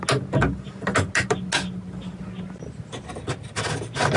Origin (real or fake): real